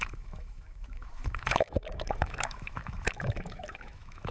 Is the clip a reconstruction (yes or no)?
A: yes